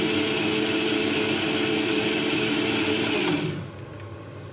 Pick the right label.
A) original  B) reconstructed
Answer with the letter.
A